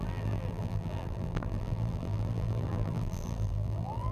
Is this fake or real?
fake